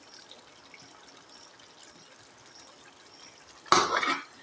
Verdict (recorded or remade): recorded